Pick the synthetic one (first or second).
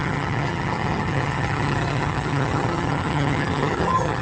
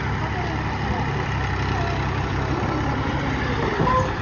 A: first